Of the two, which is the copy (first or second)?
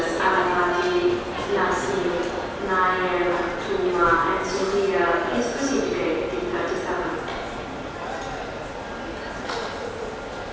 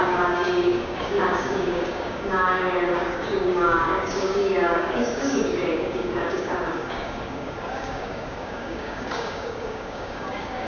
second